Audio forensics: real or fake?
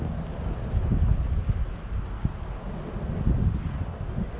real